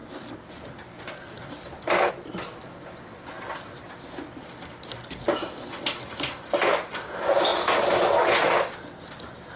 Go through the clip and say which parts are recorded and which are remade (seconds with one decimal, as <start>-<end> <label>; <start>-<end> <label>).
0.0-2.1 remade; 2.1-9.6 recorded